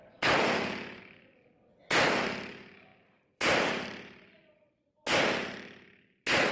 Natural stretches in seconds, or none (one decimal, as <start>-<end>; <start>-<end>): 0.0-2.9; 4.9-6.5